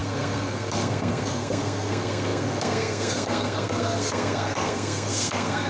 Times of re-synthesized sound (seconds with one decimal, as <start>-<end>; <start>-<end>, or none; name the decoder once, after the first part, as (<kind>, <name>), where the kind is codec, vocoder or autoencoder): 0.0-5.7 (codec, SNAC)

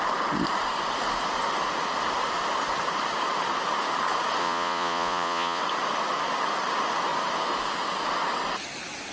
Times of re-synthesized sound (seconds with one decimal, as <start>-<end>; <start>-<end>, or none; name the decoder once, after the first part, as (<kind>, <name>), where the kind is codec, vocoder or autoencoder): 4.4-5.6 (vocoder, Vocos)

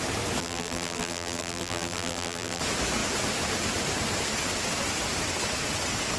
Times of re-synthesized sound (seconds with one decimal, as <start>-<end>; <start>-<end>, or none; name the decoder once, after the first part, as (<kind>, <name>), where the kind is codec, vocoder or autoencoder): 0.4-2.6 (vocoder, BigVGAN v2)

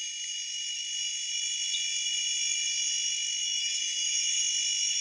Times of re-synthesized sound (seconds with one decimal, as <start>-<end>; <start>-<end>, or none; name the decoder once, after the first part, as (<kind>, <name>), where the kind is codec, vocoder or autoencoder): 3.4-4.4 (autoencoder, DAC-VAE)

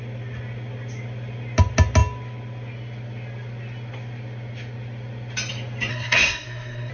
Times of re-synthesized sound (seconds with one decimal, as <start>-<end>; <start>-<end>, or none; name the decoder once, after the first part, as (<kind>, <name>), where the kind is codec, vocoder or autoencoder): 5.9-6.9 (codec, SNAC)

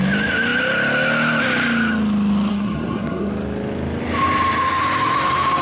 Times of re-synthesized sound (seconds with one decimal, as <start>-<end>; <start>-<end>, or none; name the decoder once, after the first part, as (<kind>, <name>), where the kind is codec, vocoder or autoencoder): 2.5-3.3 (codec, SNAC)